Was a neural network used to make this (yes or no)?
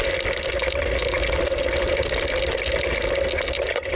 no